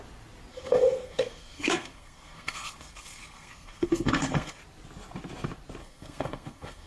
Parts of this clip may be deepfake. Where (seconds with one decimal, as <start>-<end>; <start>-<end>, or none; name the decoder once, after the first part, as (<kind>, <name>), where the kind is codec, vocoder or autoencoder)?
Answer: 0.5-4.6 (codec, SNAC); 5.8-6.9